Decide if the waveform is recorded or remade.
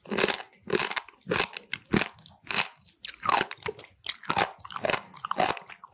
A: recorded